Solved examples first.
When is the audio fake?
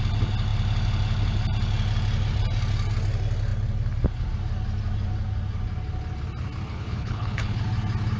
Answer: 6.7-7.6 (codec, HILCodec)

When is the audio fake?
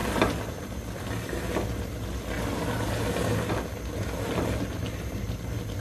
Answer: none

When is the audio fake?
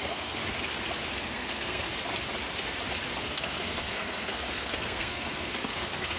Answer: 0.0-0.4 (codec, SNAC); 1.2-1.9; 3.1-6.2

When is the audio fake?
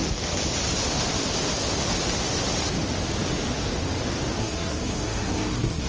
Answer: 4.4-5.9 (codec, SNAC)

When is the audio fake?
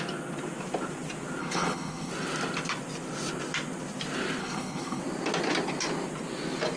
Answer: 1.4-2.1 (codec, HILCodec); 4.4-5.0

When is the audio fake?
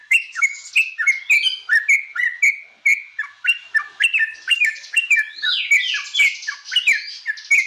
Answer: 0.0-0.7 (codec, DAC); 4.3-5.6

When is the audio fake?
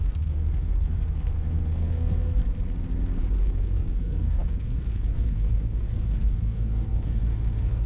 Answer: 0.0-2.4 (codec, SNAC); 3.4-7.9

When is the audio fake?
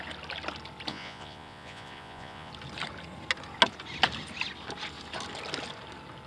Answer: 0.9-2.5 (vocoder, Vocos)